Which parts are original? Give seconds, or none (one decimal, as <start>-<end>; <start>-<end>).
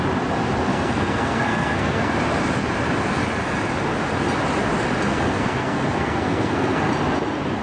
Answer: 0.0-0.7; 2.2-5.1; 6.9-7.6